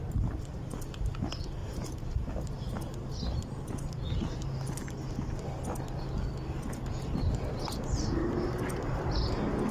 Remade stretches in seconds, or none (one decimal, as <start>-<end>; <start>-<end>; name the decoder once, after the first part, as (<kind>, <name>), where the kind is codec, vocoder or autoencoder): 1.6-2.5 (vocoder, BigVGAN v2)